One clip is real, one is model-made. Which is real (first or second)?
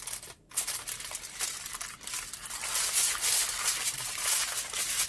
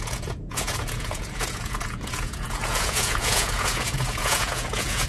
first